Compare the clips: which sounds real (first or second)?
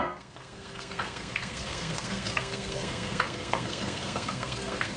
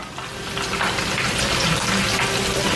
second